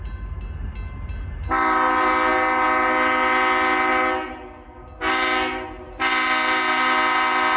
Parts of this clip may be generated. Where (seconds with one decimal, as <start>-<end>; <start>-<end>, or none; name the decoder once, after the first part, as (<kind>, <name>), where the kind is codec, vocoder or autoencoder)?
none